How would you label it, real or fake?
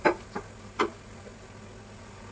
real